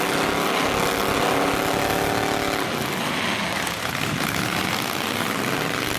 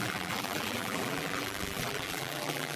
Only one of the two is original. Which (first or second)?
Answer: first